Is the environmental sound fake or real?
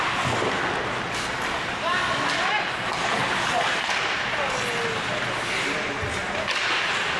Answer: real